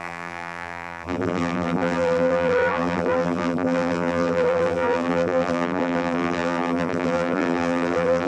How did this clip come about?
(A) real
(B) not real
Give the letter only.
B